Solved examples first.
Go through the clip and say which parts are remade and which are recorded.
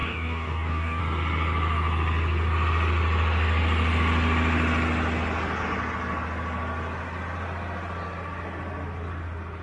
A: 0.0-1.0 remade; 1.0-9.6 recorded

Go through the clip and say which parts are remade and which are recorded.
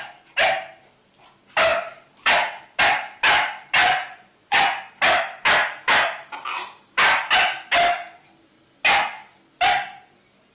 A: 0.0-3.8 recorded; 3.8-4.9 remade; 4.9-10.5 recorded